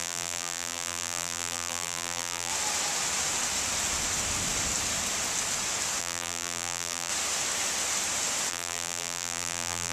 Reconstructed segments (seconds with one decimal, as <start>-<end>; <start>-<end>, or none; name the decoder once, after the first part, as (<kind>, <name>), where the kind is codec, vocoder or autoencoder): 0.0-2.5 (vocoder, BigVGAN v2); 6.0-7.1; 8.5-9.9